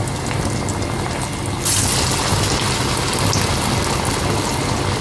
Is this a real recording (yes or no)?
yes